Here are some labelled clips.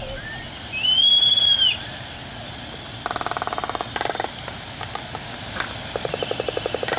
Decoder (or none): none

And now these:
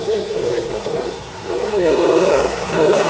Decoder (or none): codec, SNAC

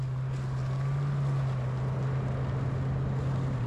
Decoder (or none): none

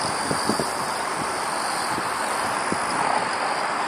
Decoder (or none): none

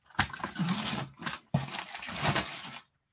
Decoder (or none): none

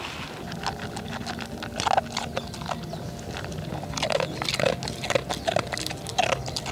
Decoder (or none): none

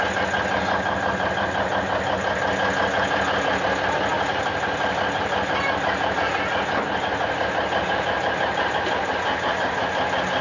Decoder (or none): none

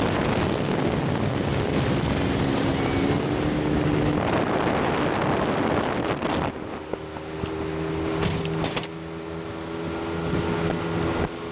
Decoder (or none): none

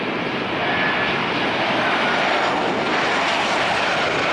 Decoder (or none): none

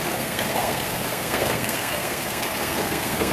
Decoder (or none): codec, SNAC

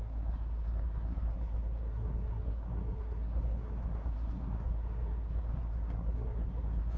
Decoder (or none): codec, SNAC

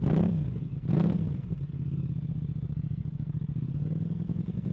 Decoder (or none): codec, SNAC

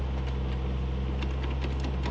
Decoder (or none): none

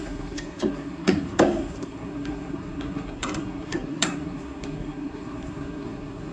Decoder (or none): codec, SNAC